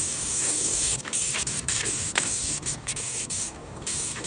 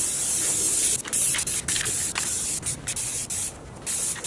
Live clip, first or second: second